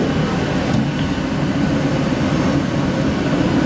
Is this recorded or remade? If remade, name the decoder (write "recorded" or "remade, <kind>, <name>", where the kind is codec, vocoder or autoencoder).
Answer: recorded